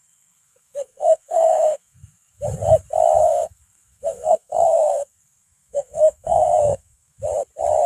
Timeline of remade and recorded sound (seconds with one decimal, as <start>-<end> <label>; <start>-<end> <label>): 0.0-2.4 remade; 2.4-3.2 recorded; 3.2-7.2 remade; 7.2-7.9 recorded